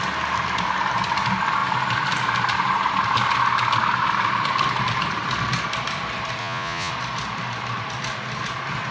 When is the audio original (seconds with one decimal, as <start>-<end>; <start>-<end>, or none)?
0.0-6.4; 6.9-8.9